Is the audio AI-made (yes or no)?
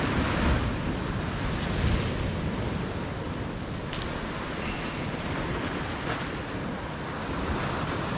no